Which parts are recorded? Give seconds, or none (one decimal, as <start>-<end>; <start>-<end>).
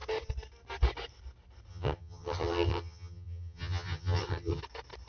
0.0-1.7; 4.6-5.1